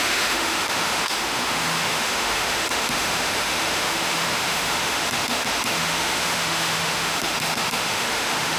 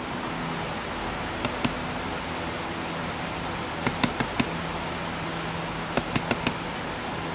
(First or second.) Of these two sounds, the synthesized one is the first